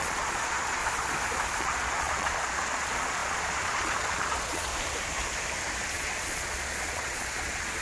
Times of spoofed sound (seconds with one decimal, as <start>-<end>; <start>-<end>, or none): 0.0-0.8; 1.6-4.7; 5.9-7.8